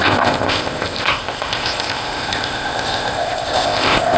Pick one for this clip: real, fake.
fake